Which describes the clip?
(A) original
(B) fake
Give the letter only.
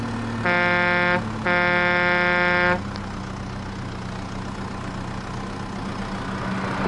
A